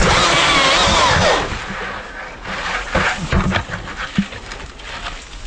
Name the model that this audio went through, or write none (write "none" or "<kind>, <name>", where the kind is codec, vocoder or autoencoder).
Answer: none